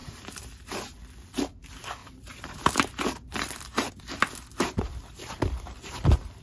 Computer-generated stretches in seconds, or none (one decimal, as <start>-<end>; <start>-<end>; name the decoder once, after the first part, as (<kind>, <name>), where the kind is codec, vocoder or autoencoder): 0.0-0.5 (vocoder, BigVGAN v2); 2.0-3.9